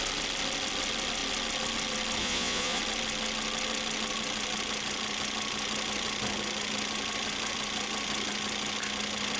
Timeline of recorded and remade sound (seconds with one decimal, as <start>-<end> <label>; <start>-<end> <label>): 0.0-2.2 recorded; 2.2-2.8 remade; 2.8-9.4 recorded